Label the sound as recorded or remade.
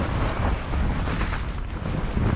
remade